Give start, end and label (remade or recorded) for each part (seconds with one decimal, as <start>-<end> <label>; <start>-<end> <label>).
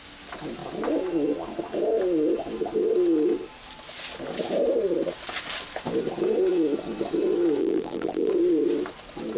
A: 0.0-7.6 recorded; 7.6-8.3 remade; 8.3-9.4 recorded